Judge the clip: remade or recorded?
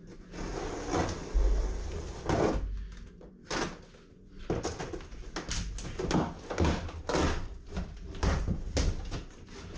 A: recorded